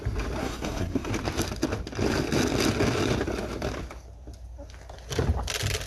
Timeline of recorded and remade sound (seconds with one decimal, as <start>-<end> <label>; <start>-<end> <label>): 0.0-0.4 recorded; 0.4-1.1 remade; 1.1-5.9 recorded